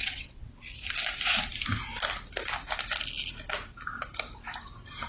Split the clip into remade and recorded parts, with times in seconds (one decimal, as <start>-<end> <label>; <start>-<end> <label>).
0.0-0.5 remade; 0.5-5.1 recorded